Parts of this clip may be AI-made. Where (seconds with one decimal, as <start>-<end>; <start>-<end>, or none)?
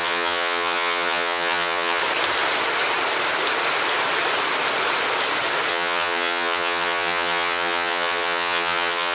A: 0.0-2.0; 5.7-9.1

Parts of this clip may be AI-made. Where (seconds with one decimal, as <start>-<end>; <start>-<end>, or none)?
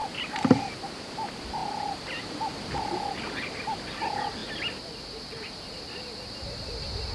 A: 1.6-2.2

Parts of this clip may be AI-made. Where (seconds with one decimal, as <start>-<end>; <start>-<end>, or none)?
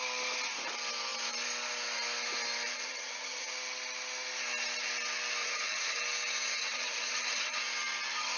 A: 2.7-3.5; 5.4-6.0; 6.5-7.6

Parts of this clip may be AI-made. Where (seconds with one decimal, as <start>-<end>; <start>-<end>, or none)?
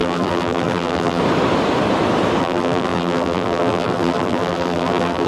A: 0.0-1.2; 2.4-5.3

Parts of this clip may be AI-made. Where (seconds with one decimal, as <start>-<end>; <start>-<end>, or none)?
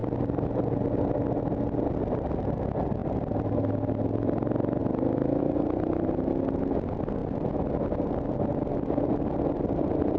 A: none